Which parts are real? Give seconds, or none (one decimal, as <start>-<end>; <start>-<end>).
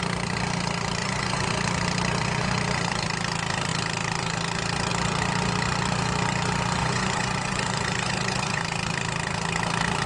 0.0-1.0; 1.5-6.8; 8.6-10.1